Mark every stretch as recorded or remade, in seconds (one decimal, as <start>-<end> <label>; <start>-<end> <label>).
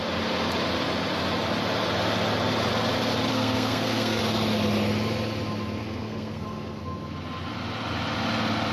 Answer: 0.0-3.3 recorded; 3.3-4.2 remade; 4.2-5.8 recorded; 5.8-6.8 remade; 6.8-8.7 recorded